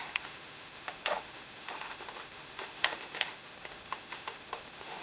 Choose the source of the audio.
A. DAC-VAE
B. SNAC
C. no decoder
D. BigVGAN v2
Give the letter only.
A